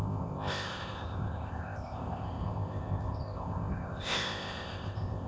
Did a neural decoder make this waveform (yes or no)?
yes